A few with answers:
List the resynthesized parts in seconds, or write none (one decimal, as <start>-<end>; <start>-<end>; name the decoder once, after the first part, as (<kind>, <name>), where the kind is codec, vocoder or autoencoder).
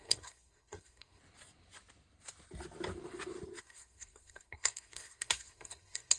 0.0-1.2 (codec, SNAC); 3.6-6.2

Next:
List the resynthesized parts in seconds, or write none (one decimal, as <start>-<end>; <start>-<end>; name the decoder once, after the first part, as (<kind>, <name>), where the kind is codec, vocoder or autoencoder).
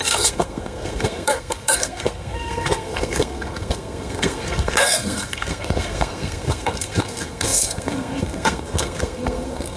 0.0-9.8 (codec, SNAC)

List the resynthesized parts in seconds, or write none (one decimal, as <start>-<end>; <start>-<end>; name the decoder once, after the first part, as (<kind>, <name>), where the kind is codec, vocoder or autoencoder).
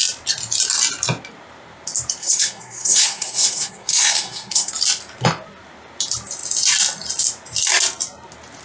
2.2-4.7 (codec, SNAC)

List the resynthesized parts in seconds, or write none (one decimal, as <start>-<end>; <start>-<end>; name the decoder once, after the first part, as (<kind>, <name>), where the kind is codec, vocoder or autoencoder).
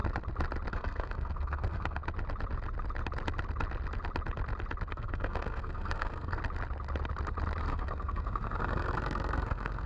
0.7-2.0 (codec, SNAC); 4.9-6.4; 7.6-9.9